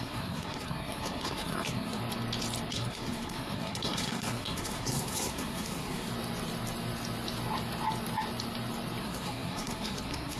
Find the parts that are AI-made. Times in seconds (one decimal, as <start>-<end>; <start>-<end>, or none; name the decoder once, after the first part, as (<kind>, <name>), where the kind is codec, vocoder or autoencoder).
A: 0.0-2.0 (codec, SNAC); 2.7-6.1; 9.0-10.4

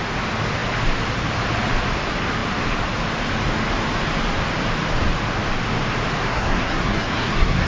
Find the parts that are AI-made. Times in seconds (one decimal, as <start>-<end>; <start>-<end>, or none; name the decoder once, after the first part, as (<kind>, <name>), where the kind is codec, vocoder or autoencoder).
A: 6.3-7.7 (codec, SNAC)

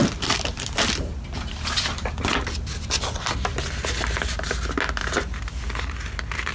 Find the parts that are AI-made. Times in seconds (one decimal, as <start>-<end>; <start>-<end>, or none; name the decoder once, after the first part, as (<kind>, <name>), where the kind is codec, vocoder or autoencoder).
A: none

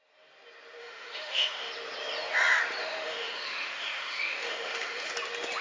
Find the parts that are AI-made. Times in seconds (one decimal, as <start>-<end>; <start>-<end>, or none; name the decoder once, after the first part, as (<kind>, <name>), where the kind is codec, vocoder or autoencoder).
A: 0.8-1.7 (autoencoder, DAC-VAE); 2.8-5.1

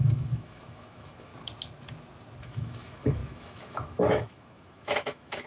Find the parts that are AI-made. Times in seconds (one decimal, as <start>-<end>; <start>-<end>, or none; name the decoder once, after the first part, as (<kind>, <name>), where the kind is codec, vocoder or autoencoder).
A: 0.0-1.3 (autoencoder, DAC-VAE); 2.4-5.5